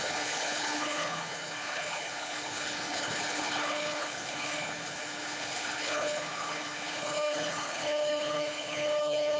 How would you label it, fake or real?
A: fake